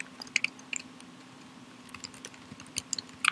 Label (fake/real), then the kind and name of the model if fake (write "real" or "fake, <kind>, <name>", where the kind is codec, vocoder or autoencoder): real